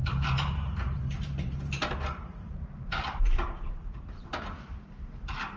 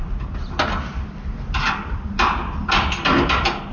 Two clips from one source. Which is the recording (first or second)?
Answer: second